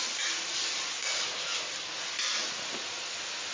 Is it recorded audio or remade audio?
recorded